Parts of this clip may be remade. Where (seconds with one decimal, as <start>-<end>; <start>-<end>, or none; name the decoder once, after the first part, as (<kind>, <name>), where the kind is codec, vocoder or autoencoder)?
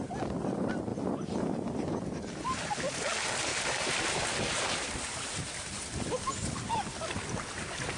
0.9-2.0 (vocoder, BigVGAN v2); 3.5-4.0